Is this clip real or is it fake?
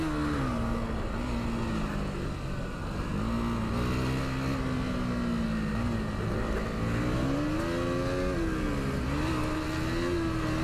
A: real